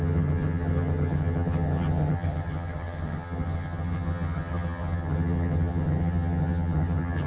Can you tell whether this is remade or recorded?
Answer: remade